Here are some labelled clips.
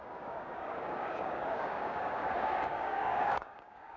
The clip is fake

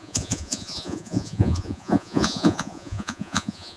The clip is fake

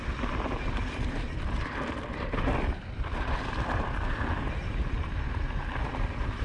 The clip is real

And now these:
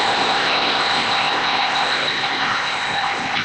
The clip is fake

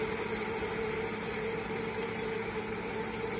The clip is real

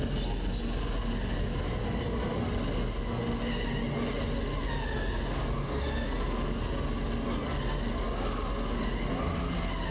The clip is real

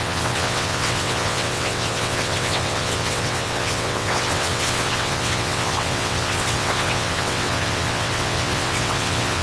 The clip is fake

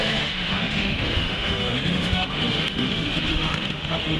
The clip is fake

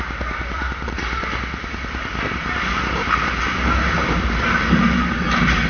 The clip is real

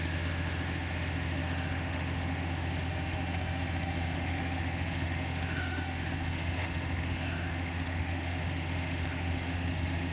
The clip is fake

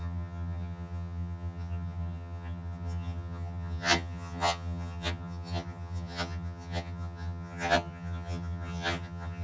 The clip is fake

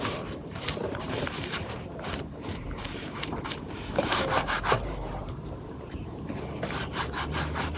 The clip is fake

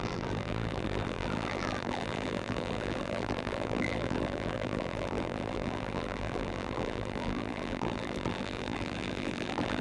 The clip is fake